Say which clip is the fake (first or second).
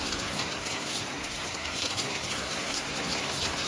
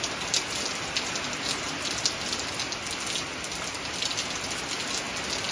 first